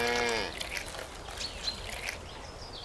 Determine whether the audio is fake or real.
real